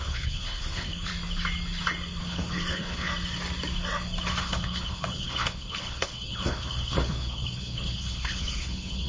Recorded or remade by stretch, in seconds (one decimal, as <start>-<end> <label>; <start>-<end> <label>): 0.0-1.1 remade; 1.1-2.2 recorded; 2.2-3.1 remade; 3.1-4.4 recorded; 4.4-9.1 remade